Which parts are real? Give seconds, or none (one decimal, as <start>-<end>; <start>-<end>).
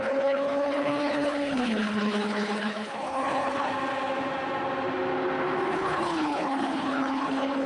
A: 3.7-5.7